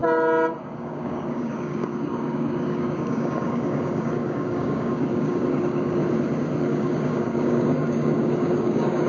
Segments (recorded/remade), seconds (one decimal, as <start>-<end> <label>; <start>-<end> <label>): 0.0-0.6 recorded; 0.6-6.0 remade; 6.0-6.6 recorded; 6.6-9.1 remade